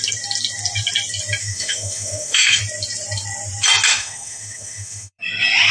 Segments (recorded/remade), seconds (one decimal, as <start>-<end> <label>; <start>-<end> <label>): 0.0-1.4 recorded; 1.4-2.6 remade; 2.6-3.9 recorded; 3.9-5.2 remade; 5.2-5.7 recorded